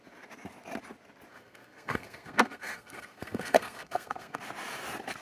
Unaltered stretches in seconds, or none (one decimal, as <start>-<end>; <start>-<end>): 0.0-1.3; 4.4-5.2